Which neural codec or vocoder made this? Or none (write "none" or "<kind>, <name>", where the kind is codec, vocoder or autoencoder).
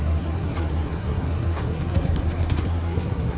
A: codec, SNAC